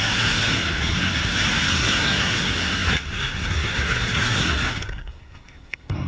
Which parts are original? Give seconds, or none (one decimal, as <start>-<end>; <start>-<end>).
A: none